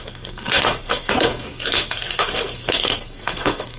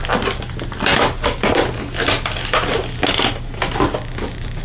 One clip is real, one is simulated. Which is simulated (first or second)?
first